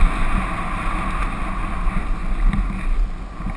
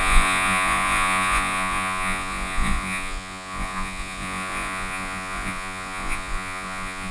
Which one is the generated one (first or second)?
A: second